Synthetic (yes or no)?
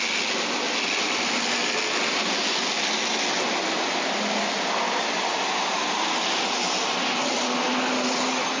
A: no